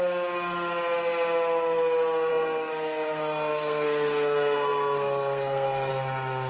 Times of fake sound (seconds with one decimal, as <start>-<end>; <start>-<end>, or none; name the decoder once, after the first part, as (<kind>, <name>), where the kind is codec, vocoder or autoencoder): 2.3-5.9 (codec, SNAC)

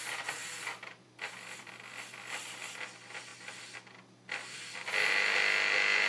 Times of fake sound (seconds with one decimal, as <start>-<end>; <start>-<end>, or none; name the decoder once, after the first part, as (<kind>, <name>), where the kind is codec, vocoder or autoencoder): 0.4-1.7 (vocoder, BigVGAN v2)

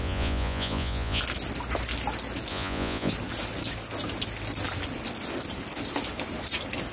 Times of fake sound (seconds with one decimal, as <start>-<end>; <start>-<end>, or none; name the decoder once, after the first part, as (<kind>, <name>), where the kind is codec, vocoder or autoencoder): 0.0-1.2 (vocoder, Vocos); 2.5-3.1

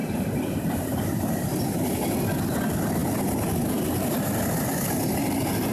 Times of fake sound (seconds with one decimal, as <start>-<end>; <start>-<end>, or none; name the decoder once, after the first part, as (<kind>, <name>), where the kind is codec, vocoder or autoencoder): 0.0-2.1 (vocoder, BigVGAN v2)

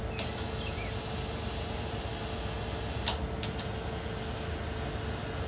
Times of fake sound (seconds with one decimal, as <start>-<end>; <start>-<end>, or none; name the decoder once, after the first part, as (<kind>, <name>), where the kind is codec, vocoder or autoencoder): none

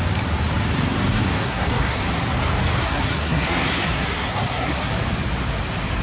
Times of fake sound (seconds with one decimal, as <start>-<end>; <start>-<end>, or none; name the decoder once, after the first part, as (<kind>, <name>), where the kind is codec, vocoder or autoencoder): 1.1-2.0 (codec, SNAC); 2.8-4.9